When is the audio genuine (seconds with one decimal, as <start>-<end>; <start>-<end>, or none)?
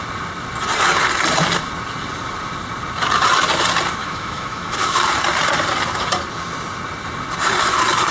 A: 0.0-4.0; 5.1-8.1